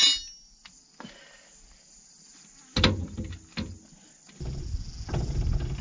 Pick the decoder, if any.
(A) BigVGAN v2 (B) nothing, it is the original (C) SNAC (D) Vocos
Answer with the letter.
B